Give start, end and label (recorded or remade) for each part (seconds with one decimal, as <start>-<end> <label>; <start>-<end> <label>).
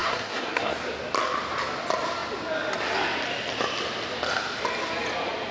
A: 0.0-0.7 remade; 0.7-5.5 recorded